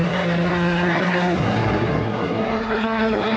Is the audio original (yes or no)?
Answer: no